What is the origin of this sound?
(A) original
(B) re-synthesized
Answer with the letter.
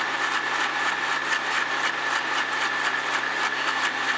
A